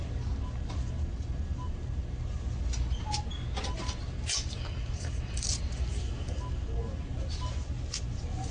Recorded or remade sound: recorded